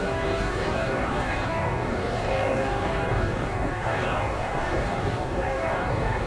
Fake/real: fake